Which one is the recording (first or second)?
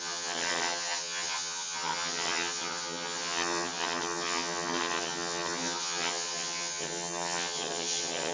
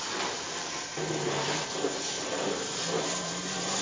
second